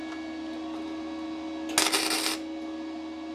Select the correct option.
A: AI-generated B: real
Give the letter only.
B